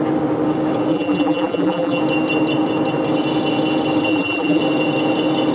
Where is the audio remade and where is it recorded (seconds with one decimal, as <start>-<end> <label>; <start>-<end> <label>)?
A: 0.0-0.9 recorded; 0.9-2.0 remade; 2.0-4.1 recorded; 4.1-4.6 remade; 4.6-5.5 recorded